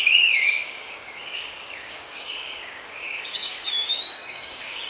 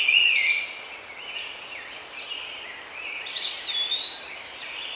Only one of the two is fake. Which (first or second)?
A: first